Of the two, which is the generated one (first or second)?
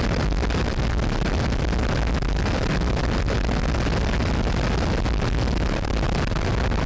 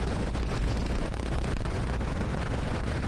second